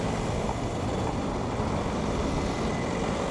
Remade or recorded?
recorded